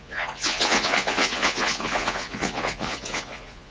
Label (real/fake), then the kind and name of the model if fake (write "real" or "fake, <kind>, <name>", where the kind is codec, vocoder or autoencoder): fake, vocoder, Vocos